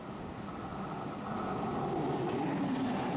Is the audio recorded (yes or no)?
yes